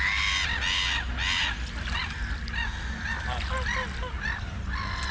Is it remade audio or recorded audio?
recorded